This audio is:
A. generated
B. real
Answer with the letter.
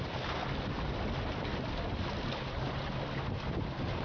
B